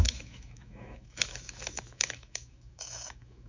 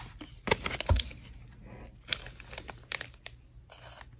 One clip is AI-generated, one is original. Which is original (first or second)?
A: second